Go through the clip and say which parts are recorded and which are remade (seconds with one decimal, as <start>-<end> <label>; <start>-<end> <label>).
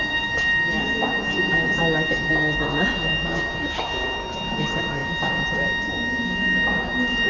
0.0-7.3 recorded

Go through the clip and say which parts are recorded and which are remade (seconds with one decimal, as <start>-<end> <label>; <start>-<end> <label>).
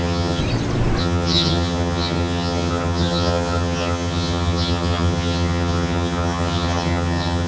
0.0-0.4 remade; 0.4-1.0 recorded; 1.0-7.5 remade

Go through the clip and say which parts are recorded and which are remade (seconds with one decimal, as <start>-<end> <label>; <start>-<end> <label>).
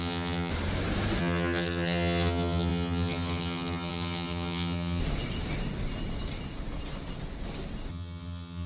0.0-0.5 remade; 0.5-1.2 recorded; 1.2-5.0 remade; 5.0-7.9 recorded; 7.9-8.7 remade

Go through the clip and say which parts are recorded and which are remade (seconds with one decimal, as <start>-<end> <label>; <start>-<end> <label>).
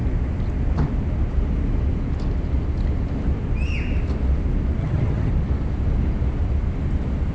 0.0-4.8 recorded; 4.8-5.3 remade; 5.3-7.3 recorded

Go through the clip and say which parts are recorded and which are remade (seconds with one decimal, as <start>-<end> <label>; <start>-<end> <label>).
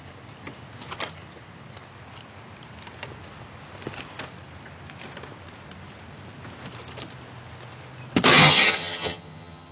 0.0-8.3 recorded; 8.3-9.7 remade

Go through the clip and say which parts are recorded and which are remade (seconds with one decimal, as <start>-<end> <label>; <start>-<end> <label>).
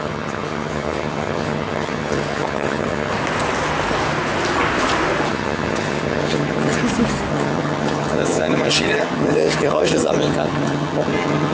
0.0-3.1 remade; 3.1-5.3 recorded; 5.3-6.8 remade; 6.8-7.3 recorded; 7.3-11.5 remade